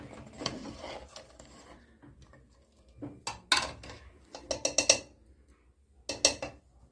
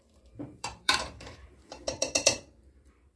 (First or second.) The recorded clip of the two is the first